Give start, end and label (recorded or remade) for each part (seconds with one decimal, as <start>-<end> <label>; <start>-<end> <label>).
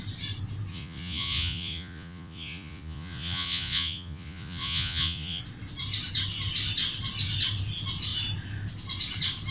0.0-0.7 recorded; 0.7-5.4 remade; 5.4-9.5 recorded